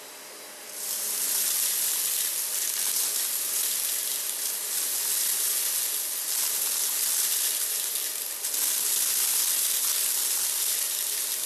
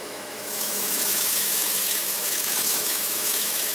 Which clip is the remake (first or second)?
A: second